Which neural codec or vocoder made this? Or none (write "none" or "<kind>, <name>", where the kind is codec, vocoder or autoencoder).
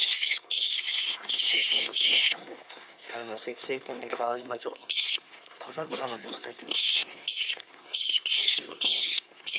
codec, SNAC